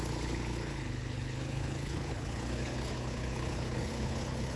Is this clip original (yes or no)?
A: no